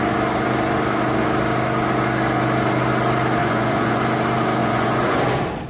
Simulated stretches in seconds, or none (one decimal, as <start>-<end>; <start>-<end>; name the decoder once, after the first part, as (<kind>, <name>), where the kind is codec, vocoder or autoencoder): 3.4-4.0 (vocoder, Vocos); 4.6-5.2